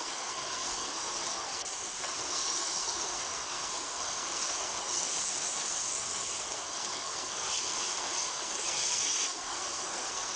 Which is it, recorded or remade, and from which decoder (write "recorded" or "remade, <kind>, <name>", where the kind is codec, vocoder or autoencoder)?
remade, codec, SNAC